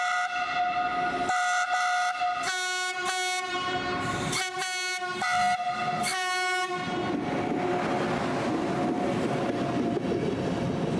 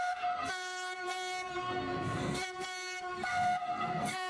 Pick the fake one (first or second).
second